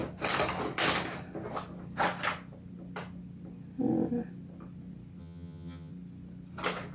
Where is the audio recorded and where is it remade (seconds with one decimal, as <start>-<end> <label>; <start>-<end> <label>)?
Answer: 0.0-5.2 recorded; 5.2-5.9 remade; 5.9-6.9 recorded